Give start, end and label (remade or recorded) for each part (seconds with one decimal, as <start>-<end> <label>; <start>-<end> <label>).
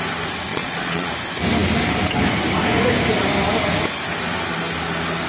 0.0-0.5 recorded; 0.5-1.1 remade; 1.1-5.3 recorded